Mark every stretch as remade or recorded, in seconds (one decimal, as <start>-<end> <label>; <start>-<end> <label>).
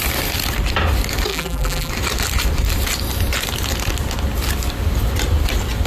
0.0-1.3 recorded; 1.3-1.9 remade; 1.9-5.9 recorded